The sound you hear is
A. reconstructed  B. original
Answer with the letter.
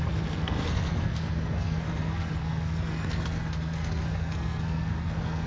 A